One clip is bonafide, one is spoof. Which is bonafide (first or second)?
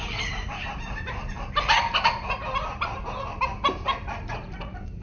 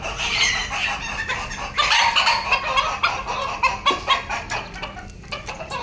second